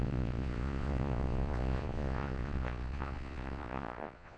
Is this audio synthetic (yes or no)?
yes